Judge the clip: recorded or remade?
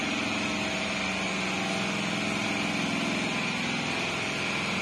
recorded